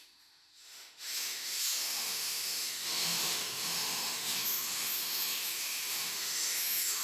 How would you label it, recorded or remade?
remade